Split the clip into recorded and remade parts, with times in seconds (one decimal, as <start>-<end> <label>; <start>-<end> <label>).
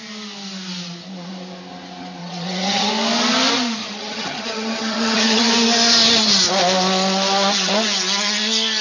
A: 0.0-2.2 recorded; 2.2-2.9 remade; 2.9-3.8 recorded; 3.8-5.5 remade; 5.5-8.8 recorded